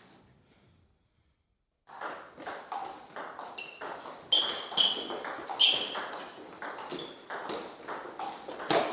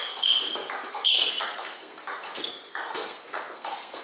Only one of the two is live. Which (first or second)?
first